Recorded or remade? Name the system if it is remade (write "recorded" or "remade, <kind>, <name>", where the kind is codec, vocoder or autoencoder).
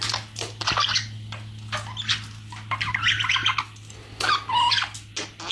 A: recorded